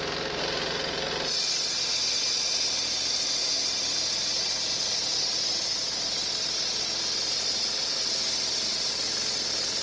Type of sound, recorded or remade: recorded